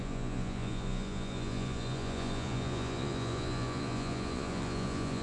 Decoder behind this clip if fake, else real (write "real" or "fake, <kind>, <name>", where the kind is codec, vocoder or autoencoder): fake, vocoder, Vocos